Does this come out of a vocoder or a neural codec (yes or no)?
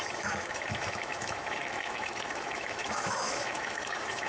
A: yes